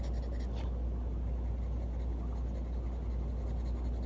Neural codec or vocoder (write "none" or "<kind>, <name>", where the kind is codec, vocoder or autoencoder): none